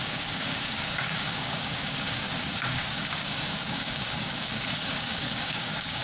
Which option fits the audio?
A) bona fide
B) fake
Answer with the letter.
B